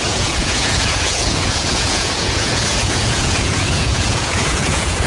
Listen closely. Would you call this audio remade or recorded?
remade